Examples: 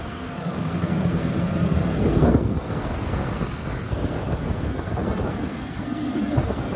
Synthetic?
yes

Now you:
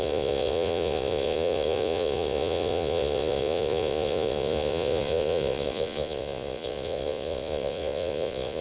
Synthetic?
yes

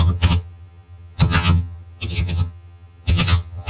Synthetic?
yes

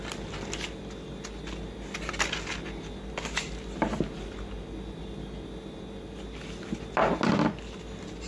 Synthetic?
no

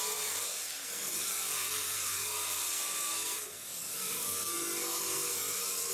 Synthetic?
yes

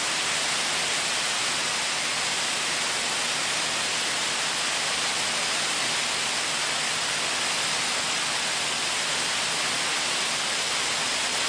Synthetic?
no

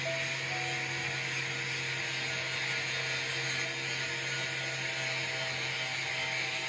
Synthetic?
no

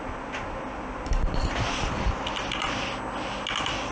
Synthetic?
no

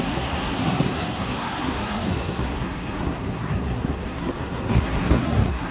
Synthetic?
yes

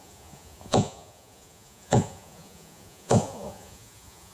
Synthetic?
yes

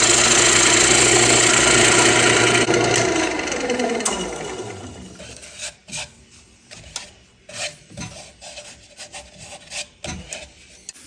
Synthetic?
no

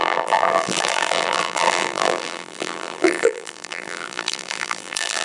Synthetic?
yes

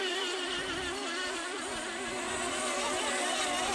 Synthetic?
yes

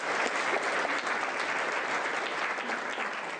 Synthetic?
no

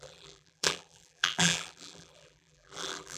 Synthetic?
yes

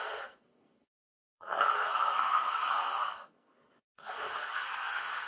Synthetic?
yes